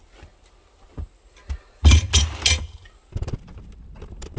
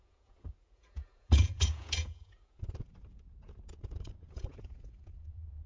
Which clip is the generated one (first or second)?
second